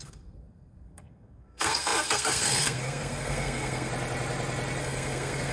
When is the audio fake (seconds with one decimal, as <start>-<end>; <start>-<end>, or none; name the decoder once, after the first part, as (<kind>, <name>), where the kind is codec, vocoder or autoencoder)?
0.0-3.9 (codec, SNAC); 4.8-5.5